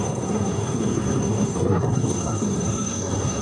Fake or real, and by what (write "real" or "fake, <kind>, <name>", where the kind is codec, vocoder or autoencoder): fake, codec, SNAC